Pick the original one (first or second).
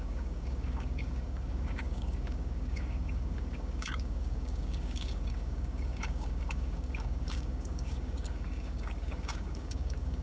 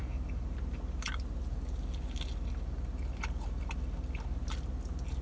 second